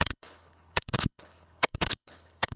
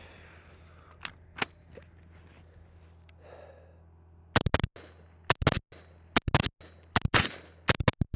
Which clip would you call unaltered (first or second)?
second